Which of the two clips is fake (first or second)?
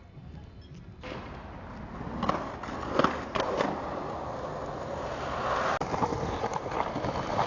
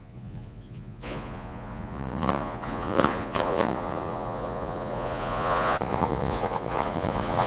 second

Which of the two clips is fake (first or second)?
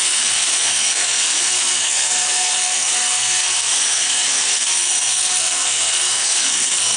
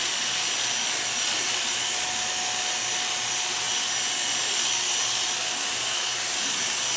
first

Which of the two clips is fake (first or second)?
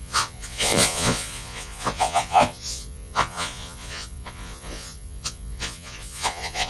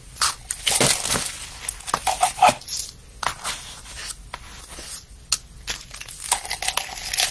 first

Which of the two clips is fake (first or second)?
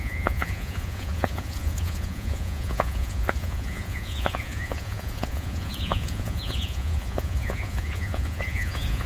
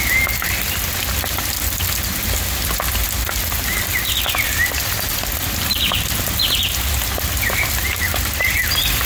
first